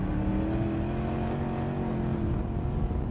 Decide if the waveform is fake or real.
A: real